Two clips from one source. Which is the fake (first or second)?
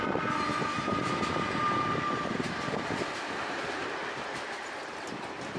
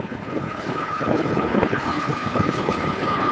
second